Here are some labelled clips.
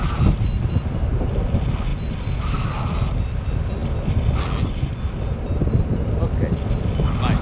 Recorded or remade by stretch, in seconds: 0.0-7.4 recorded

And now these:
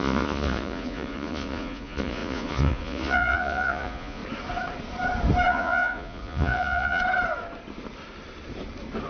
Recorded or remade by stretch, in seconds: 0.0-4.2 remade; 4.2-5.5 recorded; 5.5-7.0 remade; 7.0-9.1 recorded

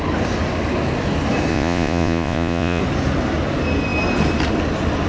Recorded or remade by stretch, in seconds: 0.0-1.5 recorded; 1.5-2.8 remade; 2.8-5.1 recorded

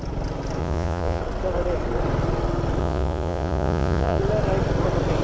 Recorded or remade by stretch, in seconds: 0.0-0.6 recorded; 0.6-1.2 remade; 1.2-2.8 recorded; 2.8-4.2 remade; 4.2-5.2 recorded